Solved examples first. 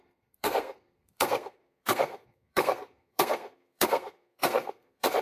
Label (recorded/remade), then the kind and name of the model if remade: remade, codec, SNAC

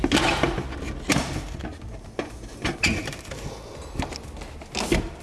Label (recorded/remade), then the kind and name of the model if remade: recorded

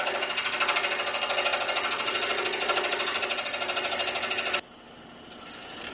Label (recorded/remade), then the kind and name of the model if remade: recorded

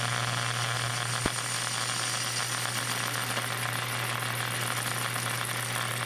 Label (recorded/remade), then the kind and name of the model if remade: recorded